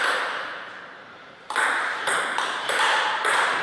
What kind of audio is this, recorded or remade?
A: remade